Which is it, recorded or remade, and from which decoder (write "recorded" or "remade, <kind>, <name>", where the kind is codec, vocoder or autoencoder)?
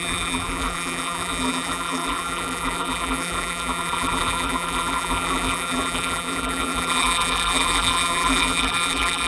remade, vocoder, BigVGAN v2